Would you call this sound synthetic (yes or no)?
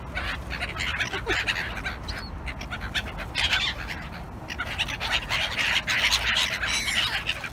no